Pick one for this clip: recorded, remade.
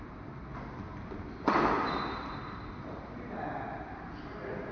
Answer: recorded